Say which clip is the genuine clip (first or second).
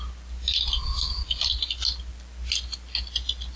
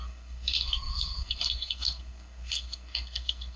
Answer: first